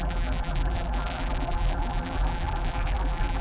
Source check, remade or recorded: remade